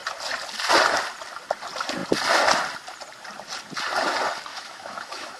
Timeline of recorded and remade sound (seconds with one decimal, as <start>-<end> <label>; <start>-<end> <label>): 0.0-4.5 recorded; 4.5-5.4 remade